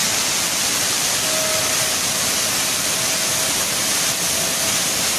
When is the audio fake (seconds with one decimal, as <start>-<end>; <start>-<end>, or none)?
none